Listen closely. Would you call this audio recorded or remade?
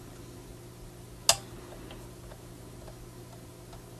recorded